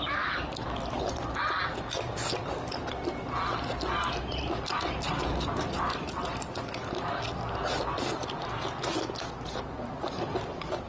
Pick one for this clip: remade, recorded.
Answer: recorded